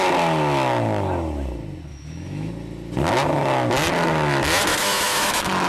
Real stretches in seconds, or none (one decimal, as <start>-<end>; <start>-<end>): 0.0-1.9; 2.5-4.7